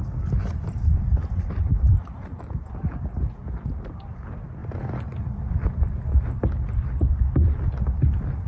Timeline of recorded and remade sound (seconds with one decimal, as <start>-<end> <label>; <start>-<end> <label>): 0.0-1.5 remade; 1.5-4.6 recorded; 4.6-6.0 remade; 6.0-8.5 recorded